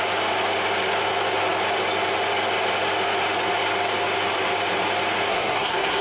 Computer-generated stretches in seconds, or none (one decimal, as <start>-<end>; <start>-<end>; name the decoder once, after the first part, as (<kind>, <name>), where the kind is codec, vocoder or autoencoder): 5.3-6.0 (codec, SNAC)